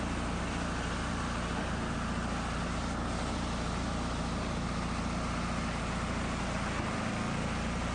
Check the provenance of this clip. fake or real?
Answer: real